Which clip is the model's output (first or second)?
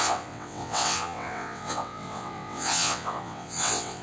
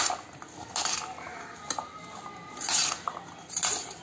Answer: first